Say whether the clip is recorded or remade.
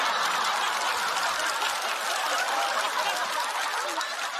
recorded